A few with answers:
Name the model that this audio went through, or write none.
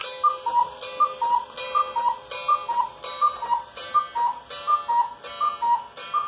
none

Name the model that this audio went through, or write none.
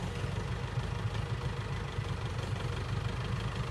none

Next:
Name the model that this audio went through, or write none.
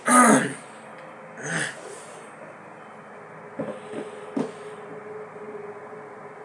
none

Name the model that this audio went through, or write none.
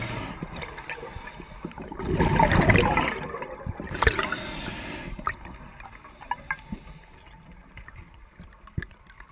none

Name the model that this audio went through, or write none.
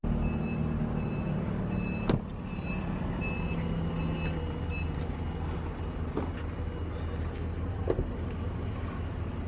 none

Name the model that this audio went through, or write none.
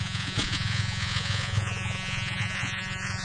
vocoder, Vocos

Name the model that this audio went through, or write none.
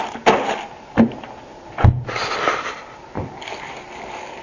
none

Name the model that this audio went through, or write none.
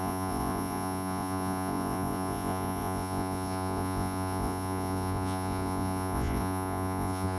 vocoder, Vocos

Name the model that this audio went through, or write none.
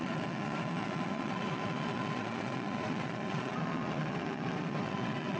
vocoder, Vocos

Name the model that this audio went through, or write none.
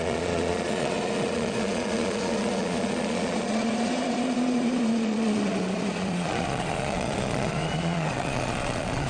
vocoder, Vocos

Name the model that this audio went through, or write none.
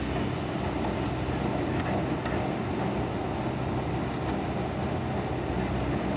none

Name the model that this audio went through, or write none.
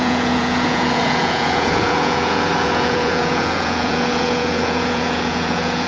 vocoder, Vocos